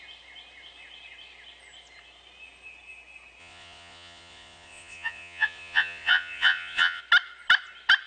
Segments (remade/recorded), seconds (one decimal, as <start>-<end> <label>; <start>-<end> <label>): 0.0-3.4 recorded; 3.4-7.0 remade; 7.0-8.1 recorded